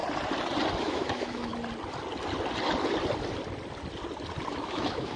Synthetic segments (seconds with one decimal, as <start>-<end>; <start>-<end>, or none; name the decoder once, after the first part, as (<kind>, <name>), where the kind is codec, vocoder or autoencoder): 0.8-1.5 (autoencoder, DAC-VAE); 4.6-5.2